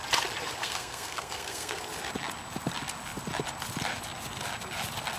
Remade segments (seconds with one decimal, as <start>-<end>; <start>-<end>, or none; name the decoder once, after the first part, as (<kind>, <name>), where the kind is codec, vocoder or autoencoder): 0.6-1.8 (codec, SNAC)